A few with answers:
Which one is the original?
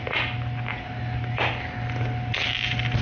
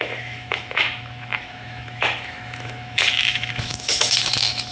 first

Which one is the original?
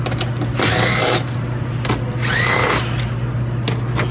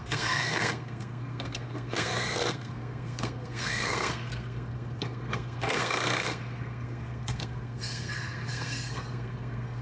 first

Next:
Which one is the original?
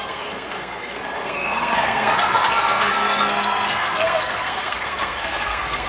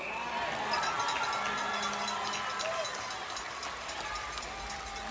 second